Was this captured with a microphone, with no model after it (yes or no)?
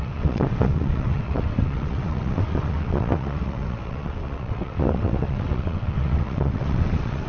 no